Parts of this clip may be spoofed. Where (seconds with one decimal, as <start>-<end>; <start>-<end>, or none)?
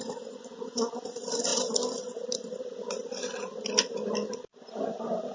none